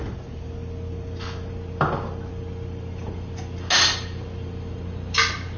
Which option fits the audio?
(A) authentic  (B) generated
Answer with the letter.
A